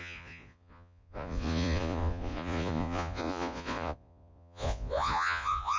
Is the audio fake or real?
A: fake